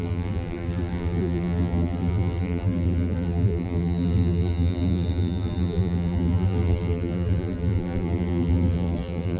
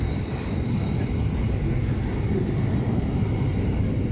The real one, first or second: second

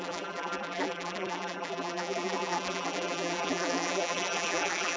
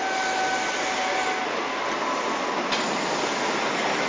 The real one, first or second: second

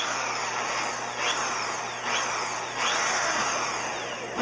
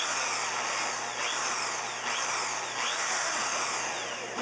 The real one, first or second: first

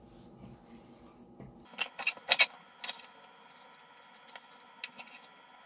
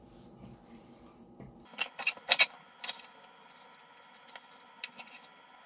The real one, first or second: first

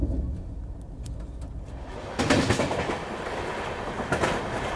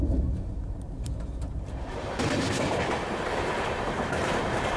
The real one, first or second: first